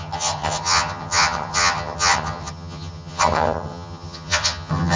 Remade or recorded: remade